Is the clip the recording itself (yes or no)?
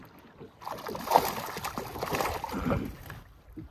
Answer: yes